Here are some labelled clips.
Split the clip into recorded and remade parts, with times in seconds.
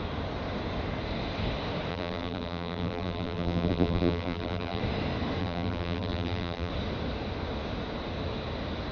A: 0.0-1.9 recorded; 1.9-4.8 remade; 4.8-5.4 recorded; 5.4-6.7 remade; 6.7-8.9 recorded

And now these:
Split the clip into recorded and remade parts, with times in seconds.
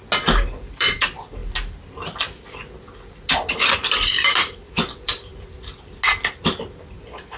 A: 0.0-0.6 recorded; 0.6-1.4 remade; 1.4-3.5 recorded; 3.5-5.3 remade; 5.3-7.0 recorded; 7.0-7.4 remade